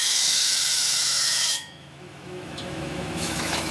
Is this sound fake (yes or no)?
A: yes